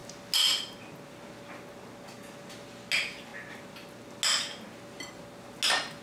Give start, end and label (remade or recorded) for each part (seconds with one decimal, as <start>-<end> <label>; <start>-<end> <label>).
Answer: 0.0-6.0 recorded

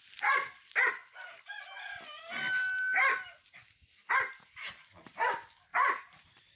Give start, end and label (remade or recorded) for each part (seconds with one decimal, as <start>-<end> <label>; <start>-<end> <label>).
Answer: 0.0-1.0 remade; 1.0-4.1 recorded; 4.1-6.6 remade

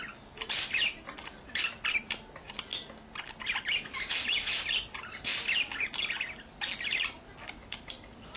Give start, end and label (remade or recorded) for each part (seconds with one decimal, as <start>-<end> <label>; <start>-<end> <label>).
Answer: 0.0-2.7 remade; 2.7-3.8 recorded; 3.8-5.3 remade; 5.3-7.4 recorded; 7.4-8.4 remade

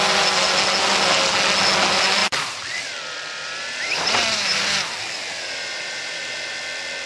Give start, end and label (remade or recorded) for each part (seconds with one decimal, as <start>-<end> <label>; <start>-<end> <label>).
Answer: 0.0-2.2 recorded; 2.2-6.5 remade; 6.5-7.1 recorded

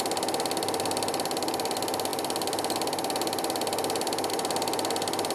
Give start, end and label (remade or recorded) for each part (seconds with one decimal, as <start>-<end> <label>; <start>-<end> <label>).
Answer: 0.0-5.3 recorded

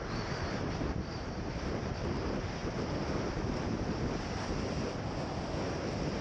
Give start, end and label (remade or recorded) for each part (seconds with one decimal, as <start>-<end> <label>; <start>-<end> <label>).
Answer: 0.0-2.6 remade; 2.6-5.8 recorded; 5.8-6.2 remade

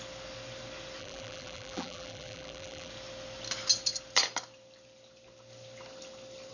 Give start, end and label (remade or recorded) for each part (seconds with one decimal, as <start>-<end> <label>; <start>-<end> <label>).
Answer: 0.0-1.0 recorded; 1.0-2.9 remade; 2.9-6.5 recorded